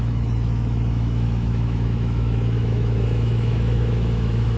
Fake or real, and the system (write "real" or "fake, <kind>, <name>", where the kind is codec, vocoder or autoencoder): fake, autoencoder, DAC-VAE